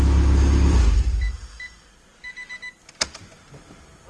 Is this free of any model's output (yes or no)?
yes